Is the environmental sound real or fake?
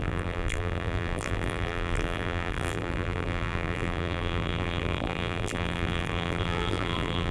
fake